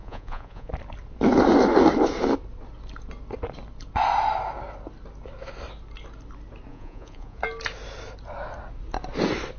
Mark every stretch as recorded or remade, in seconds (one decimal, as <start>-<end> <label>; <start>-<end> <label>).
0.0-0.7 remade; 0.7-6.7 recorded; 6.7-7.4 remade; 7.4-9.6 recorded